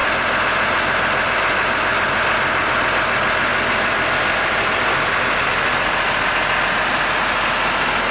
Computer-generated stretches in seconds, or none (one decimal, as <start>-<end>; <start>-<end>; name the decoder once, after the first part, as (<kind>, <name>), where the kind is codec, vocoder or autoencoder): none